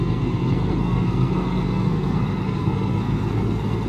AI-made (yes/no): yes